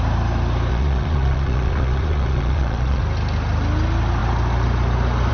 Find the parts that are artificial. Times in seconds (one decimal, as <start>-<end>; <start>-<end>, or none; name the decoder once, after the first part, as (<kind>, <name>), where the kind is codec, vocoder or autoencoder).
0.7-3.0 (vocoder, Vocos)